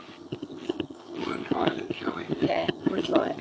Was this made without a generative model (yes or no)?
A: no